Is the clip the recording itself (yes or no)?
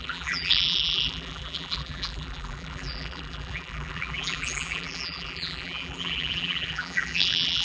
no